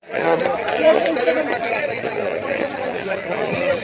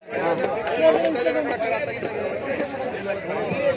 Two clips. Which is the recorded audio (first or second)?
second